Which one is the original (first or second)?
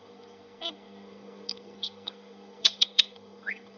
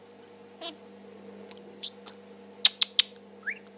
second